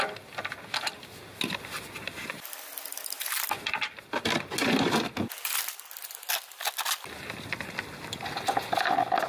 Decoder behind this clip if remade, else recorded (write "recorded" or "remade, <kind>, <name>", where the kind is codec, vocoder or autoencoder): recorded